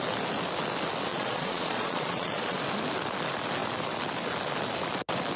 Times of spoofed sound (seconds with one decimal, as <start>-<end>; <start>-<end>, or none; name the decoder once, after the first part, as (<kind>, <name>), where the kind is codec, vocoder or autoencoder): 1.1-2.6 (vocoder, Vocos)